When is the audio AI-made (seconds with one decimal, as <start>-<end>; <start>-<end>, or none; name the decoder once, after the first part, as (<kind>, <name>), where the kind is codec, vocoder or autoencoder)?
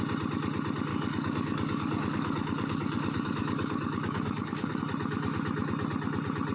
0.9-4.8 (codec, DAC)